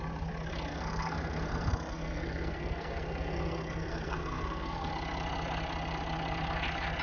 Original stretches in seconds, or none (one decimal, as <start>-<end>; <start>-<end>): 0.0-0.7; 4.9-7.0